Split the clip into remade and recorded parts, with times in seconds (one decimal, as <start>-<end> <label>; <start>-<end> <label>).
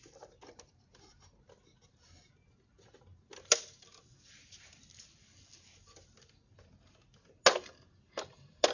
0.0-8.7 recorded